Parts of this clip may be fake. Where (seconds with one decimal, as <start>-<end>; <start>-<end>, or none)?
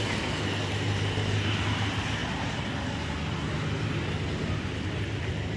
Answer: none